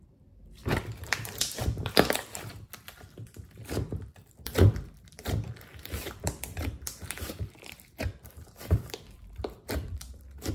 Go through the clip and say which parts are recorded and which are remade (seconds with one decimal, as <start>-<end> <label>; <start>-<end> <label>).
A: 0.0-2.5 remade; 2.5-4.3 recorded; 4.3-10.5 remade